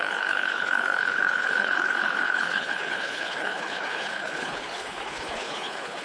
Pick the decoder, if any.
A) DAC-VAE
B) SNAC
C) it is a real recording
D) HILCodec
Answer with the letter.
D